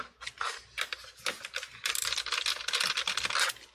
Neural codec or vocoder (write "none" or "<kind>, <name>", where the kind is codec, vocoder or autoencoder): none